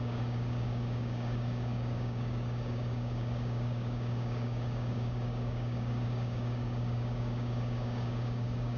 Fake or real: fake